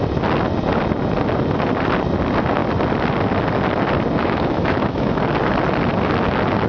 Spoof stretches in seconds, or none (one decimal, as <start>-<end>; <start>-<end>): 4.2-5.2